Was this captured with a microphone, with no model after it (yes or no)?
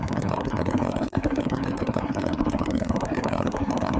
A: no